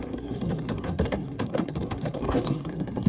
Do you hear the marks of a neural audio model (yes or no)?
yes